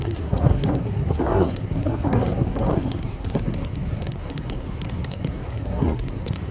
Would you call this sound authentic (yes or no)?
no